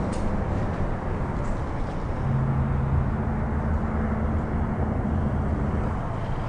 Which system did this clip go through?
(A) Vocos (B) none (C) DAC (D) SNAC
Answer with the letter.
B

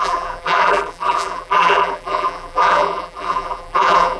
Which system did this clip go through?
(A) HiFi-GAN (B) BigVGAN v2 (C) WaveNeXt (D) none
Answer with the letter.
B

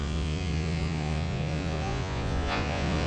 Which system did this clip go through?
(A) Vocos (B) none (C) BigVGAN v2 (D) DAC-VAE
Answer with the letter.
A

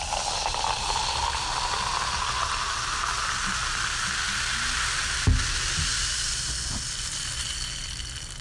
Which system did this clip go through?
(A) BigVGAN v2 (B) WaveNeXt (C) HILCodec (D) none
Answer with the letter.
D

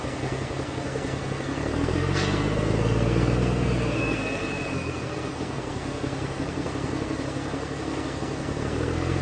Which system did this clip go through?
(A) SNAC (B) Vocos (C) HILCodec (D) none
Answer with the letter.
A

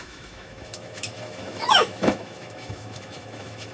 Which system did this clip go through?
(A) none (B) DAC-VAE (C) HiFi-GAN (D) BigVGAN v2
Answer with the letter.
B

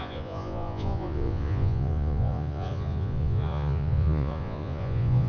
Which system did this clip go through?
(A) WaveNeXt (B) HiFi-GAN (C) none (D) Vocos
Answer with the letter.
D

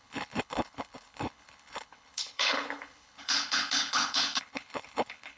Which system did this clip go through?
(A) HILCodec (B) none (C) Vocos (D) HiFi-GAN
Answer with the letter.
A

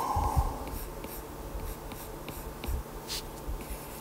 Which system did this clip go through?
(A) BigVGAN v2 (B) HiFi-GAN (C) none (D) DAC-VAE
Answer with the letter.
C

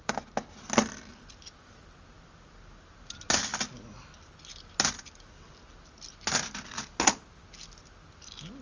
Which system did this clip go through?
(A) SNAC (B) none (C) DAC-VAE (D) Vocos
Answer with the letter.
B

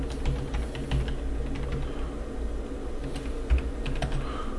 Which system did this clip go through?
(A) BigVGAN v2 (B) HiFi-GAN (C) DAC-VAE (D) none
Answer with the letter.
D